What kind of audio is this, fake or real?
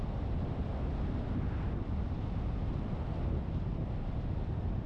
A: real